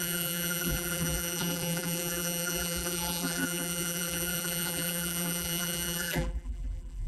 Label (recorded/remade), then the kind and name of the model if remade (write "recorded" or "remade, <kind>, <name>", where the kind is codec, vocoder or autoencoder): remade, vocoder, BigVGAN v2